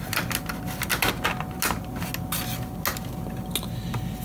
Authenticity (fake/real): real